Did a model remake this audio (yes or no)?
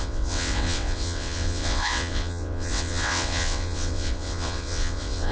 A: yes